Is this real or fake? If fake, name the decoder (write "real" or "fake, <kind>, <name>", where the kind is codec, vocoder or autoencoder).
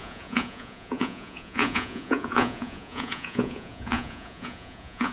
fake, vocoder, Vocos